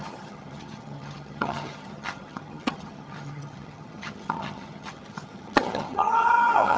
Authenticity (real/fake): fake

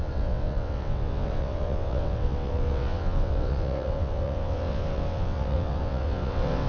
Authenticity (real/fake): fake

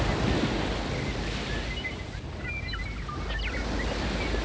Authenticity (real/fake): real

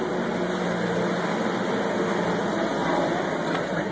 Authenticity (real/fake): real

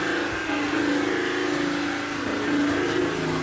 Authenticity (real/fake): real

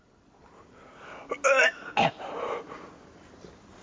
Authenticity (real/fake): real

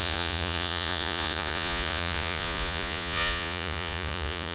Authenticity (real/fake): fake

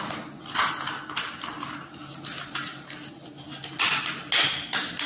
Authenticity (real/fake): real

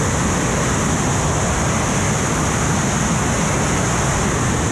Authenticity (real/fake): real